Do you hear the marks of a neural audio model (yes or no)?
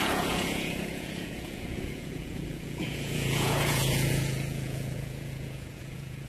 yes